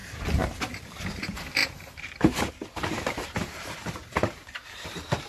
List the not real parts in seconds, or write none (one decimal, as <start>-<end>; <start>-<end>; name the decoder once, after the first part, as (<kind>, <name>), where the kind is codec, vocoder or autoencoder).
1.0-5.3 (vocoder, BigVGAN v2)